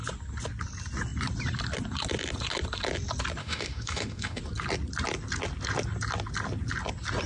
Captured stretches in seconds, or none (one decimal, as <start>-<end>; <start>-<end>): 0.0-3.4; 4.4-7.3